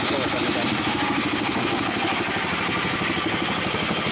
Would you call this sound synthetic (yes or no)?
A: no